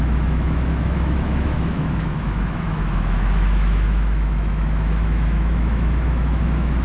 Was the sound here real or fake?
fake